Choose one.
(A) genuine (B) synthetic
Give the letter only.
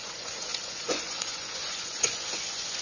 B